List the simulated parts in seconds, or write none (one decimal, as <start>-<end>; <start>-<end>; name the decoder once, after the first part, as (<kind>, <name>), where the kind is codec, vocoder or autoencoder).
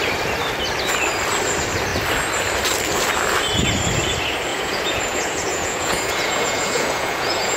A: 4.5-7.6 (vocoder, Vocos)